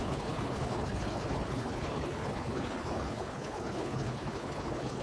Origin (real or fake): fake